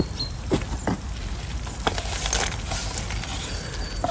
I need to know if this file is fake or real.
real